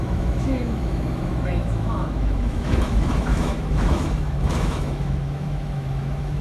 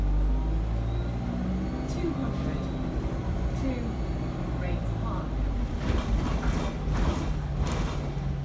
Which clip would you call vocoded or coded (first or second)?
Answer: first